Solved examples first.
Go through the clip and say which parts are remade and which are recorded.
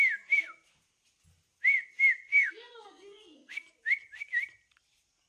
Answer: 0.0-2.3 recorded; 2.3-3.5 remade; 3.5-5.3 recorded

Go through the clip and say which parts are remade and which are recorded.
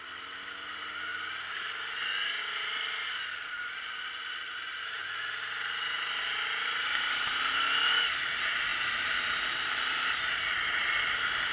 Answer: 0.0-11.5 recorded